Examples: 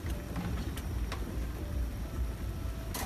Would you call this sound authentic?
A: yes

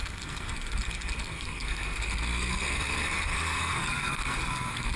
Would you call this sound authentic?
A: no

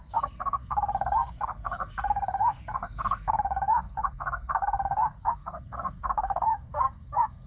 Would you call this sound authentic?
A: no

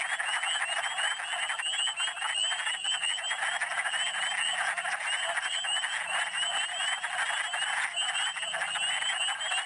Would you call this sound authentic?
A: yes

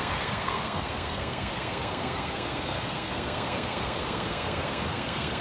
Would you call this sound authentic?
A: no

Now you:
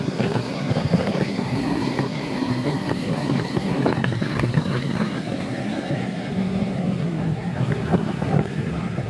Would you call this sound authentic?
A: no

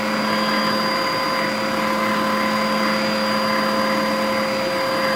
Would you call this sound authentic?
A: yes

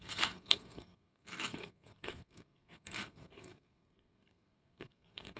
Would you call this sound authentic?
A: no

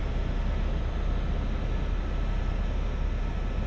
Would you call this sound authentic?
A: yes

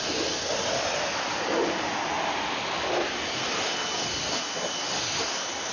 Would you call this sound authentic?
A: yes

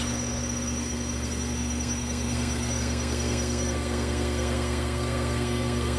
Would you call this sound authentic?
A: no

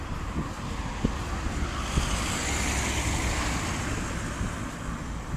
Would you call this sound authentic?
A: yes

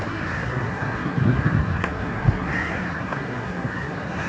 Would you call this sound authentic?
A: no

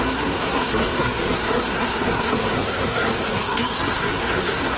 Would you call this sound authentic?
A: no